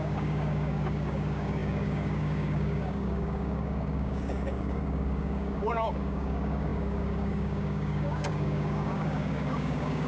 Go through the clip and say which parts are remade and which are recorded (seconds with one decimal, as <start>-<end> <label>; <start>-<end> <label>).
0.0-10.1 remade